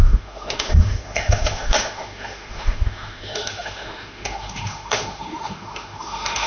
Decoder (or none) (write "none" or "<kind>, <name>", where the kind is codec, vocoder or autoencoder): autoencoder, DAC-VAE